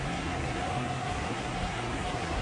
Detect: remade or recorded remade